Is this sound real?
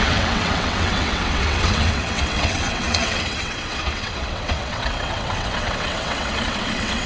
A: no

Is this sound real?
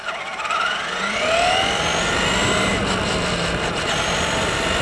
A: yes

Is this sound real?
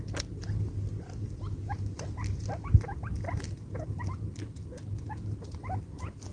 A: yes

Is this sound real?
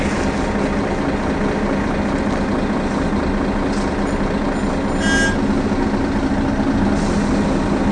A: yes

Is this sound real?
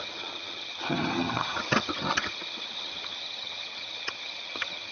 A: no